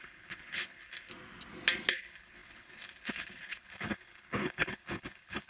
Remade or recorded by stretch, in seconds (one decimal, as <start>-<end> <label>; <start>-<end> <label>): 0.0-1.1 remade; 1.1-1.9 recorded; 1.9-5.5 remade